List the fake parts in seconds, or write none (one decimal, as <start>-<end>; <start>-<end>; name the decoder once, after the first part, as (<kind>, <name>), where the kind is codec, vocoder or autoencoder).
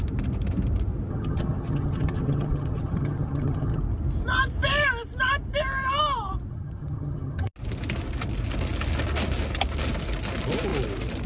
1.1-3.8 (vocoder, HiFi-GAN); 6.5-7.5